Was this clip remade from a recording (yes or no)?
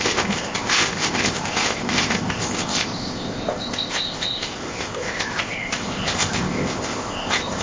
yes